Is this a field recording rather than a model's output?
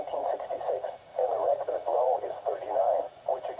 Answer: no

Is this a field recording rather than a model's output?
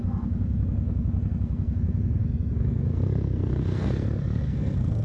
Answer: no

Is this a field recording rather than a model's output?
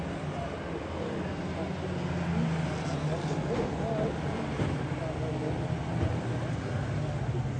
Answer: yes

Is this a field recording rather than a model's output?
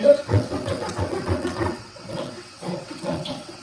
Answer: no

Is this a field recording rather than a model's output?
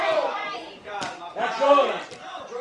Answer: no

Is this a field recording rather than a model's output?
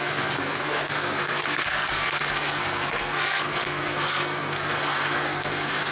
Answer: no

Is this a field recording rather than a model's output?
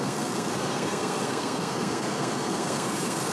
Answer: no